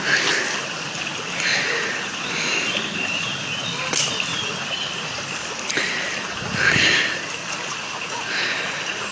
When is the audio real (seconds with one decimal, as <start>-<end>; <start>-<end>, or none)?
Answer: 0.0-1.5; 2.2-4.3; 5.2-7.4